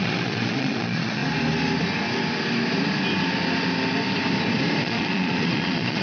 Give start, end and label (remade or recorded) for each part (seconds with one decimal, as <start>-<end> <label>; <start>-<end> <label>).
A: 0.0-1.2 remade; 1.2-4.8 recorded; 4.8-6.0 remade